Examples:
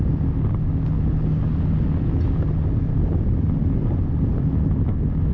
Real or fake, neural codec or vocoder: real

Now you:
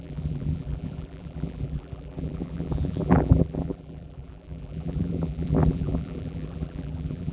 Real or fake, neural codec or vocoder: fake, vocoder, BigVGAN v2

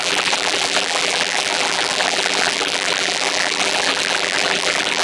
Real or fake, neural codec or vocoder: fake, vocoder, BigVGAN v2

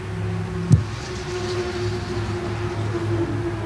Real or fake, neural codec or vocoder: real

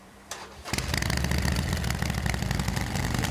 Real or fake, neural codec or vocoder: fake, vocoder, BigVGAN v2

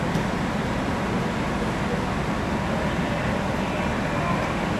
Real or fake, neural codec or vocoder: real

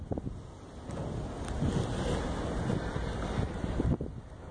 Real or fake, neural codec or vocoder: real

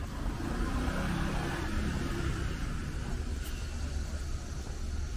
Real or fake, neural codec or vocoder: real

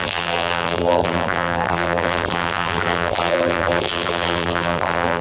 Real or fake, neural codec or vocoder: fake, vocoder, BigVGAN v2